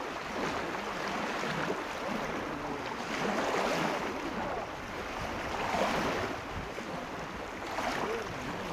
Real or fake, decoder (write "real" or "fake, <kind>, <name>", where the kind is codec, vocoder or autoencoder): real